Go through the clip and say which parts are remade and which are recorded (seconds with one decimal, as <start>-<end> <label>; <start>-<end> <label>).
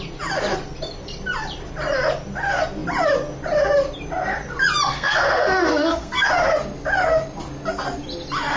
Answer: 0.0-4.9 recorded; 4.9-6.3 remade; 6.3-8.6 recorded